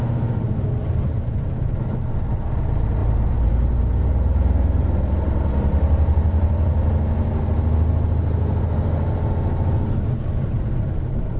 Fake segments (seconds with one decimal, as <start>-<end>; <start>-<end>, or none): 3.0-3.5